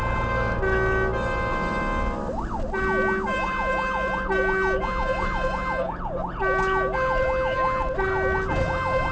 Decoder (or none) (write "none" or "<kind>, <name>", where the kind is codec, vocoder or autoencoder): none